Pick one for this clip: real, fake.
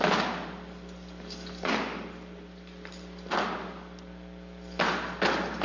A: real